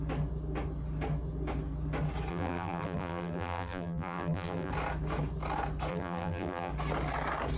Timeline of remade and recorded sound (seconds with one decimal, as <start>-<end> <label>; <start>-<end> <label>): 0.0-2.3 recorded; 2.3-4.7 remade; 4.7-5.9 recorded; 5.9-6.7 remade; 6.7-7.6 recorded